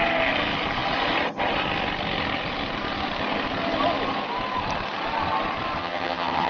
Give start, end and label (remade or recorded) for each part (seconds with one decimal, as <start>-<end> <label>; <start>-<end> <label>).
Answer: 0.0-5.8 recorded; 5.8-6.5 remade